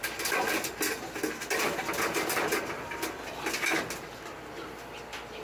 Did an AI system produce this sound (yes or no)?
no